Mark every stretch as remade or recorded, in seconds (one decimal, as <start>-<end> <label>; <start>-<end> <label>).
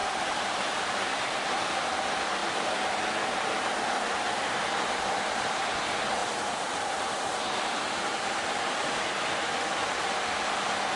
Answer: 0.0-1.1 remade; 1.1-6.2 recorded; 6.2-7.4 remade; 7.4-11.0 recorded